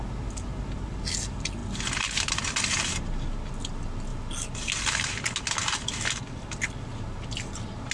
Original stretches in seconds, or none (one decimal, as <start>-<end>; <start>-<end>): 0.0-7.9